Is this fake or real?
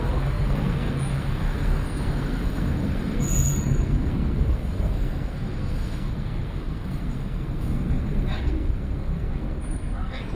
fake